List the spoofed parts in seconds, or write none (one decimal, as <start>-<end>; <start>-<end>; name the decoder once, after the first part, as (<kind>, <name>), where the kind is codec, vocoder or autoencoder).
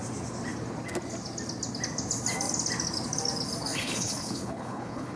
3.7-5.2 (codec, HILCodec)